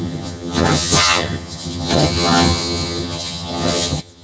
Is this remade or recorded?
remade